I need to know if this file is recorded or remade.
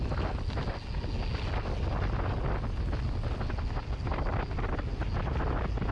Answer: recorded